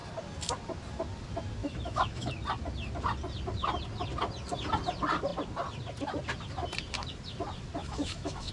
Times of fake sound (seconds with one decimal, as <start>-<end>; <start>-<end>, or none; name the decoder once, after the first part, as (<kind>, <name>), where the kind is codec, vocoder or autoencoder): 1.6-2.3 (autoencoder, DAC-VAE); 7.8-8.5